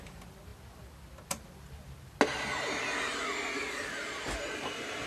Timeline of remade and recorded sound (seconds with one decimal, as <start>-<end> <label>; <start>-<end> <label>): 0.0-5.1 recorded